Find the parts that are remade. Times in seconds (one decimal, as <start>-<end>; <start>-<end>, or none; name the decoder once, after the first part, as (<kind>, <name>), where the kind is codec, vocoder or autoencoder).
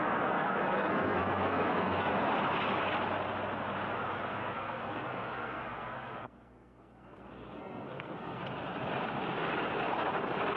0.0-2.1 (codec, SNAC); 4.3-8.4